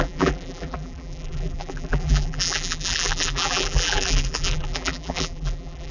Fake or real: fake